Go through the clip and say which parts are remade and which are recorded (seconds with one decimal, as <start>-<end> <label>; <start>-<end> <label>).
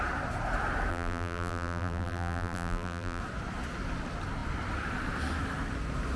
0.0-0.9 recorded; 0.9-3.2 remade; 3.2-6.2 recorded